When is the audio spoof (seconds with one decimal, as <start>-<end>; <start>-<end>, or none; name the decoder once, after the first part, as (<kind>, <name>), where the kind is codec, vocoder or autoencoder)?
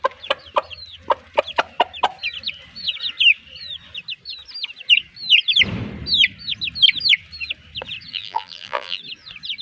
8.1-9.0 (vocoder, BigVGAN v2)